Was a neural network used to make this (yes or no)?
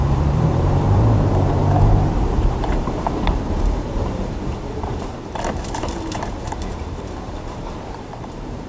yes